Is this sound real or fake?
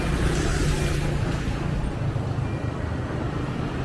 real